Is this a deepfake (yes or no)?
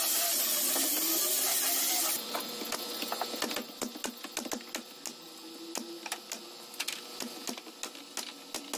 no